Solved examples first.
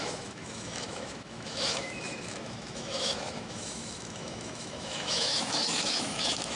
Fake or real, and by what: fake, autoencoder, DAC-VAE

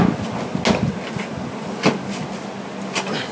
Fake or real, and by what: real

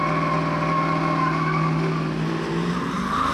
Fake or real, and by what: real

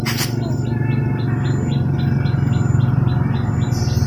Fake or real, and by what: real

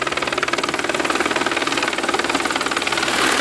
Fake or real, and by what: real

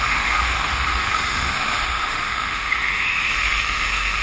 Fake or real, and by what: fake, autoencoder, DAC-VAE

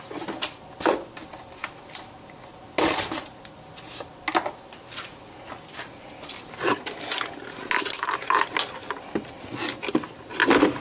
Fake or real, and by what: real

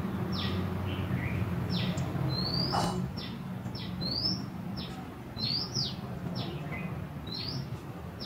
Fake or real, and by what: real